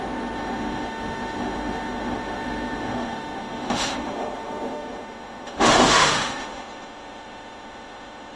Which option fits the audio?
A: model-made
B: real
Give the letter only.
A